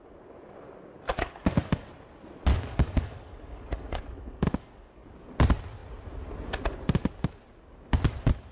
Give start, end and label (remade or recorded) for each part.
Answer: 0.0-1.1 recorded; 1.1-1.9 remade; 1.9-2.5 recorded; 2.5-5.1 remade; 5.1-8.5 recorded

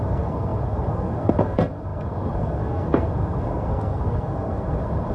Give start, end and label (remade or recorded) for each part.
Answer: 0.0-5.1 remade

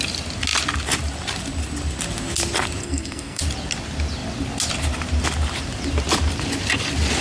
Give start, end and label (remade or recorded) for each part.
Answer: 0.0-2.8 recorded; 2.8-3.4 remade; 3.4-7.2 recorded

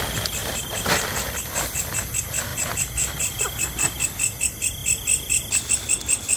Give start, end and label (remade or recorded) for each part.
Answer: 0.0-0.4 recorded; 0.4-1.4 remade; 1.4-2.5 recorded; 2.5-3.4 remade; 3.4-6.4 recorded

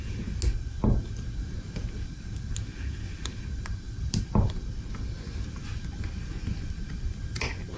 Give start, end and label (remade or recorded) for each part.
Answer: 0.0-4.0 recorded; 4.0-5.1 remade; 5.1-7.8 recorded

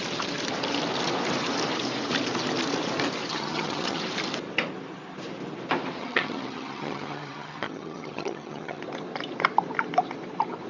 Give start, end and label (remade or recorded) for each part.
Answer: 0.0-3.3 recorded; 3.3-4.0 remade; 4.0-6.0 recorded; 6.0-8.8 remade; 8.8-10.7 recorded

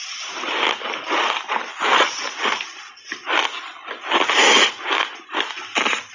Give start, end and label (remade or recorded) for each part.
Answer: 0.0-6.1 recorded